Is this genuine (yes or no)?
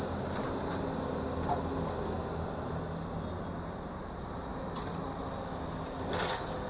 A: yes